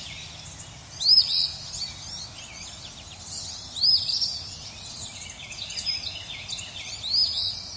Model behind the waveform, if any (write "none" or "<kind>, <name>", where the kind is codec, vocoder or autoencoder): none